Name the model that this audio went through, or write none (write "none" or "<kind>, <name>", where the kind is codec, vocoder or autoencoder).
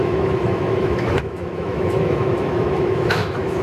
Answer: autoencoder, DAC-VAE